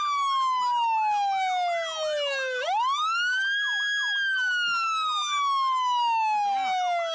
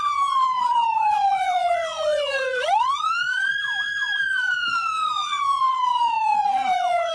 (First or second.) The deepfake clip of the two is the second